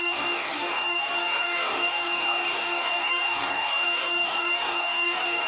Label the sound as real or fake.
fake